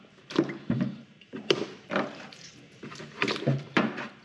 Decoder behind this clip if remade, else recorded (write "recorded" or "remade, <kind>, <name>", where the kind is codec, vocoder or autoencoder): remade, vocoder, BigVGAN v2